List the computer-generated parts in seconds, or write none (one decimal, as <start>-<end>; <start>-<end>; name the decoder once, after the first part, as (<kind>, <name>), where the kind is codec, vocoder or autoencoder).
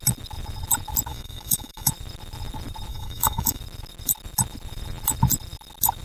1.1-1.9 (autoencoder, DAC-VAE); 2.9-3.6